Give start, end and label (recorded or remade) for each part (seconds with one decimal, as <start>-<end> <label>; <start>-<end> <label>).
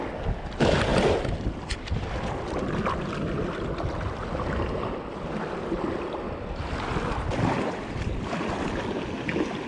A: 0.0-9.7 recorded